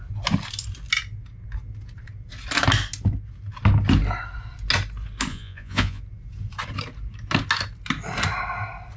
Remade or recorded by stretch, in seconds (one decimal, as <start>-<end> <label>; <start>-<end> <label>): 0.0-5.3 recorded; 5.3-6.0 remade; 6.0-9.0 recorded